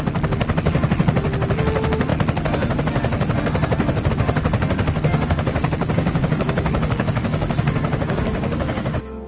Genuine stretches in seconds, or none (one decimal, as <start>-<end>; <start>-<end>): 0.0-5.1